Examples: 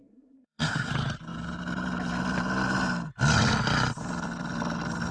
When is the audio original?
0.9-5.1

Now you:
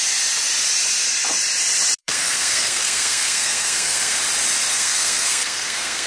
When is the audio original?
0.0-2.0; 4.2-4.7